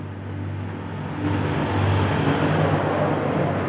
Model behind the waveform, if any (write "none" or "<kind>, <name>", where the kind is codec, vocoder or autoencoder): none